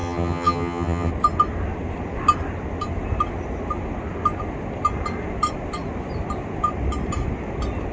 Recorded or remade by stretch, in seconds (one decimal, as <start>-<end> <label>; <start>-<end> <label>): 0.0-1.1 remade; 1.1-7.9 recorded